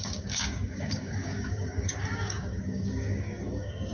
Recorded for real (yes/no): no